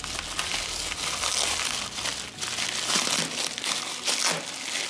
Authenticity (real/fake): real